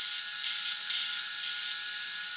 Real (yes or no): yes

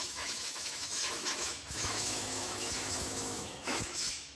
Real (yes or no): no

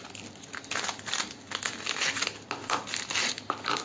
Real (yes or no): yes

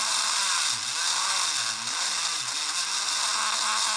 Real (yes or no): yes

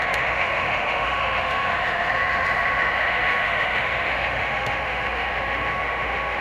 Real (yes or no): no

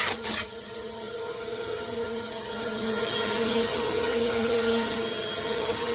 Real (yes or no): no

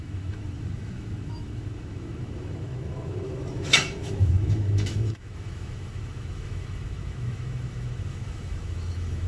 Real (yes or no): no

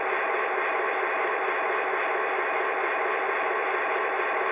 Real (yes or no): no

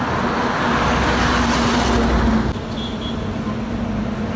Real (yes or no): yes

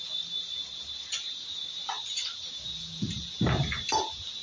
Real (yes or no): yes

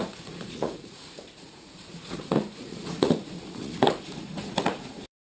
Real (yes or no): no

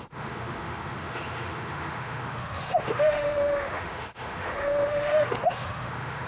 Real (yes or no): no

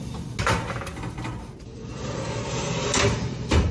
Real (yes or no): yes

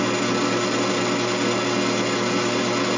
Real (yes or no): yes